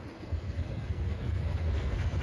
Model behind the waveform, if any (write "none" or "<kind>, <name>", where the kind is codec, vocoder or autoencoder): codec, SNAC